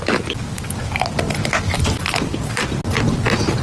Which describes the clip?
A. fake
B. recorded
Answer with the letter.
B